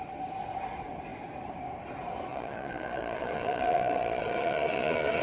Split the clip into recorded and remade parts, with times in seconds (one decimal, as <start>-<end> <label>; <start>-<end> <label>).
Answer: 0.0-2.3 recorded; 2.3-5.2 remade

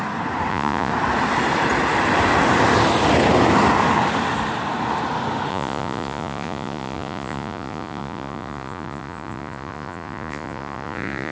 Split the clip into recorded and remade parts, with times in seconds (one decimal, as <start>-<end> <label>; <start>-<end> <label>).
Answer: 0.0-0.5 recorded; 0.5-0.9 remade; 0.9-5.5 recorded; 5.5-11.3 remade

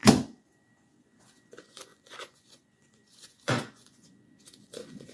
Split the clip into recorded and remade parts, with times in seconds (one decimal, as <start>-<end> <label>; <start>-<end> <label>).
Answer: 0.0-5.1 remade

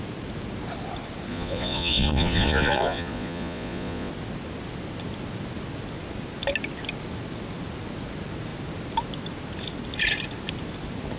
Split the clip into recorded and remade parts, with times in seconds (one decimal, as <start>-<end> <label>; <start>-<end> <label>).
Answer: 0.0-1.3 recorded; 1.3-4.1 remade; 4.1-11.2 recorded

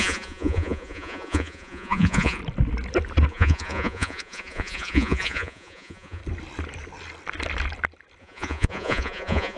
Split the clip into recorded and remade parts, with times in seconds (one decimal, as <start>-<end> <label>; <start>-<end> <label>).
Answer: 0.0-2.4 remade; 2.4-3.3 recorded; 3.3-6.2 remade; 6.2-8.2 recorded; 8.2-9.6 remade